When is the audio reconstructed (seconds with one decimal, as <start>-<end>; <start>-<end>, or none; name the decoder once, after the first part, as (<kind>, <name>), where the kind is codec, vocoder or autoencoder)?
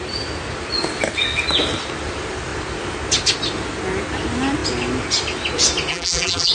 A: 5.9-6.5 (vocoder, BigVGAN v2)